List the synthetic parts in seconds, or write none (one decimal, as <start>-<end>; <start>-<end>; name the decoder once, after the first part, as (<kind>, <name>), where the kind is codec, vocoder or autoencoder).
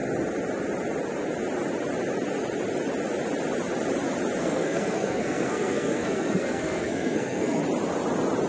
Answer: 4.4-7.6 (codec, SNAC)